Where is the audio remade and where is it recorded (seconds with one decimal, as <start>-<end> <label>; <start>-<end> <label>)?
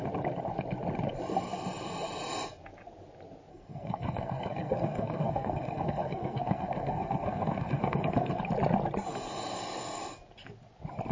0.0-3.5 recorded; 3.5-8.4 remade; 8.4-11.1 recorded